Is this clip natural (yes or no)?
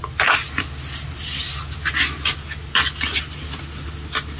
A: yes